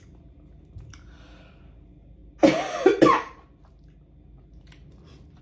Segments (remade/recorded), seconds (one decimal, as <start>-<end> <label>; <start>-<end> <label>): 0.0-5.4 recorded